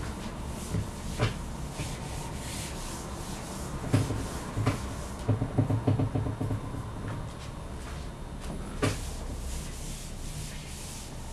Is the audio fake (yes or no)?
no